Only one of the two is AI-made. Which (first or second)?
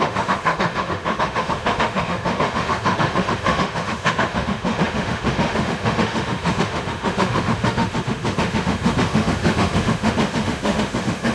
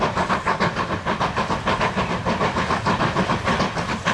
first